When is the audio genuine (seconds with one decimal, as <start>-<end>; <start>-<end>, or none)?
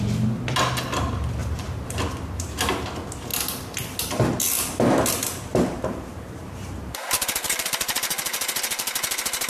0.0-1.4; 2.0-5.5; 8.0-9.5